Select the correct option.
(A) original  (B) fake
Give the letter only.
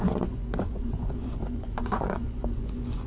B